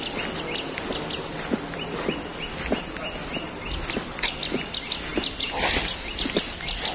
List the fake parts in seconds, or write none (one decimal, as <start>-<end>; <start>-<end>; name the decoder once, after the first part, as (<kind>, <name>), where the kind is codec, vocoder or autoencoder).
none